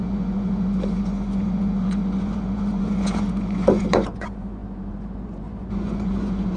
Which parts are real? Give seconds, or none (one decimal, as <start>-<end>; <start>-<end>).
none